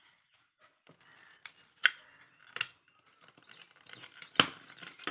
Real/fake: real